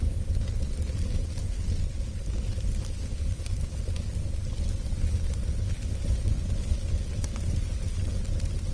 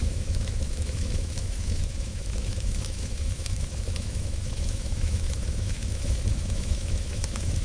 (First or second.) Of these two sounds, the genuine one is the first